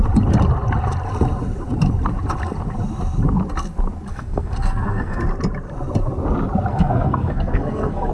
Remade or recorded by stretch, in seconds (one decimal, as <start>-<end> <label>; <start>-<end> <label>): 0.0-4.1 recorded; 4.1-5.2 remade; 5.2-6.7 recorded; 6.7-8.1 remade